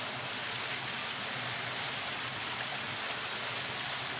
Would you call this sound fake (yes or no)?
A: no